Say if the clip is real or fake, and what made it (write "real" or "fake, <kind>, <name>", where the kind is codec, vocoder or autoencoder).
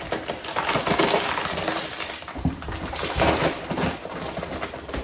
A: real